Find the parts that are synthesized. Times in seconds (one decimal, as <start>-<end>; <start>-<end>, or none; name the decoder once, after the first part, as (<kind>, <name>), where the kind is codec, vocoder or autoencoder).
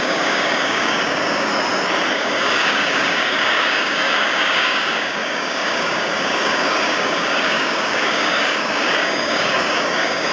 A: 0.0-1.5 (codec, DAC); 2.1-10.3